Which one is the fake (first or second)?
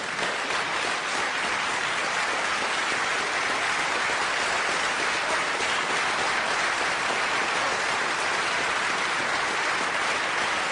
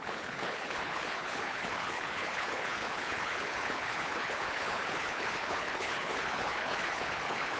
second